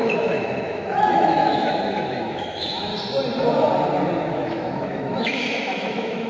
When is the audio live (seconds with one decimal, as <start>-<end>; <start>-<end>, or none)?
2.9-4.3